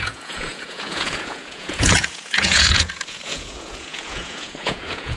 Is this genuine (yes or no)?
no